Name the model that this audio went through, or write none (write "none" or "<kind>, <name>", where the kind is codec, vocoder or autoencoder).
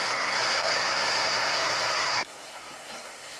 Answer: codec, SNAC